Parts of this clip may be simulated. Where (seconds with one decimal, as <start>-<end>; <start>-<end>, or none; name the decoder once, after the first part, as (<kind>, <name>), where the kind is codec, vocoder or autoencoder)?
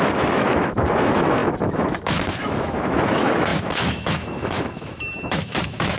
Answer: 0.0-6.0 (autoencoder, DAC-VAE)